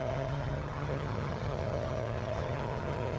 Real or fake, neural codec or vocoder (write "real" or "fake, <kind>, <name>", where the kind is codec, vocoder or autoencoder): fake, vocoder, HiFi-GAN